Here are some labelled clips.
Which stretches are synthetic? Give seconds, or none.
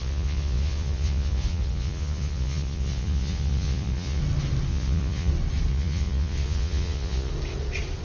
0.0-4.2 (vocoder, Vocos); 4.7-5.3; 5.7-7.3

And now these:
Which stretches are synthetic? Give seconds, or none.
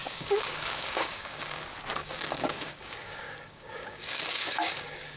0.0-1.6 (codec, DAC); 2.0-5.2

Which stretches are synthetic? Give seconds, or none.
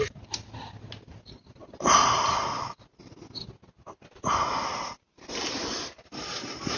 none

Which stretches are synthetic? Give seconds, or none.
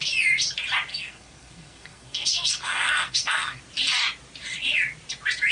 0.9-3.6 (codec, SNAC)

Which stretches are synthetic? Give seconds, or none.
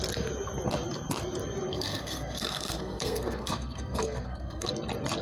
1.7-4.7 (codec, SNAC)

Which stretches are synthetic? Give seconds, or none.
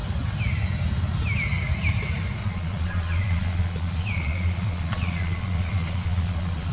2.4-6.7 (vocoder, Vocos)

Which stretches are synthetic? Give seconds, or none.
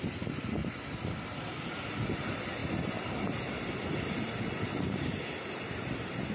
none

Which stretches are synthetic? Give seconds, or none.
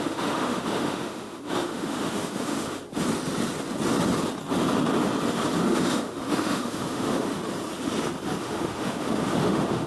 0.0-2.8 (autoencoder, DAC-VAE); 5.6-7.4; 8.4-9.9